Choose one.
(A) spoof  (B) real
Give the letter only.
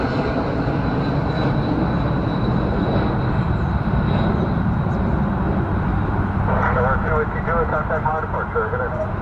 B